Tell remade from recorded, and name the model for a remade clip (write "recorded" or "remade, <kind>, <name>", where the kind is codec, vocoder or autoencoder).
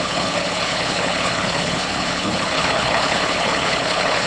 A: remade, codec, HILCodec